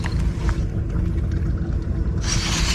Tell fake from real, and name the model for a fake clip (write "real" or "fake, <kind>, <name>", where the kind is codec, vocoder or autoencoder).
real